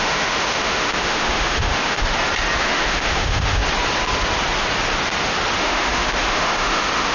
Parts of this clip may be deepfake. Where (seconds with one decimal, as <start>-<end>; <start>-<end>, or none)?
0.0-2.0; 2.6-3.6; 5.6-7.1